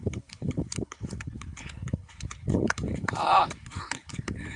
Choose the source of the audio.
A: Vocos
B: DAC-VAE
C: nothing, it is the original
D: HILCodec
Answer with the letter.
D